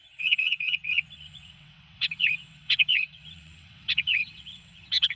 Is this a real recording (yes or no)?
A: no